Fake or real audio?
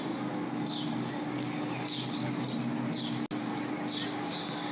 real